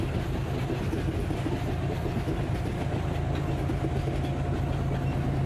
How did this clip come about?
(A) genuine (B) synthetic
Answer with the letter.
A